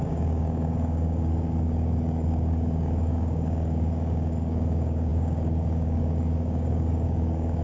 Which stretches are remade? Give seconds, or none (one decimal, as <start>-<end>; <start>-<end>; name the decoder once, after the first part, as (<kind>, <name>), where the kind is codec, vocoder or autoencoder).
0.0-7.6 (codec, DAC)